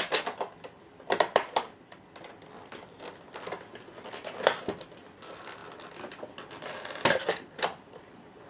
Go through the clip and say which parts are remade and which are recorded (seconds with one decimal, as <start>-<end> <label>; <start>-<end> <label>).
0.0-8.5 recorded